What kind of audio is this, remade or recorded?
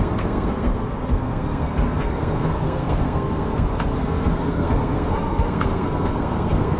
remade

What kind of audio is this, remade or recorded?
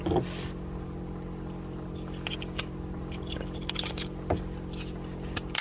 recorded